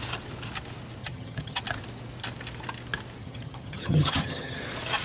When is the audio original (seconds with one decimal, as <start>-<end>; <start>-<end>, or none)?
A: 0.0-1.0; 1.6-3.2; 4.6-5.0